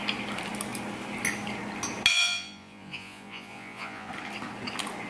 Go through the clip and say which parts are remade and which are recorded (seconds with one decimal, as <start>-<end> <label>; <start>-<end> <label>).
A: 0.0-2.1 recorded; 2.1-4.1 remade; 4.1-5.1 recorded